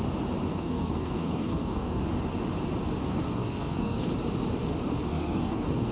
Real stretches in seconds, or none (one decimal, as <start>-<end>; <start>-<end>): 0.0-0.5; 2.0-3.0; 4.1-5.1